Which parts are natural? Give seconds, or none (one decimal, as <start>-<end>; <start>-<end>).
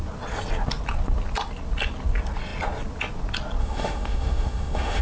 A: 0.0-3.6